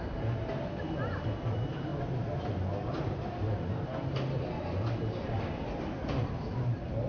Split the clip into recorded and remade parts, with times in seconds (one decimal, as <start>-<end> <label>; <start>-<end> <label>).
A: 0.0-7.1 recorded